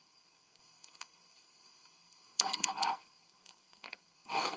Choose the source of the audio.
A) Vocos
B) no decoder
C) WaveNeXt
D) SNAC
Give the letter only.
D